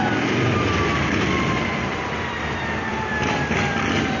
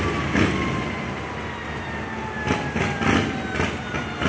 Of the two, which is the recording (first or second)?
second